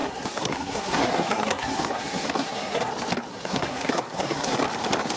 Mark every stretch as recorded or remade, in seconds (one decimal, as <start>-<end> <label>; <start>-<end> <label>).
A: 0.0-2.9 remade; 2.9-3.3 recorded; 3.3-4.6 remade; 4.6-5.2 recorded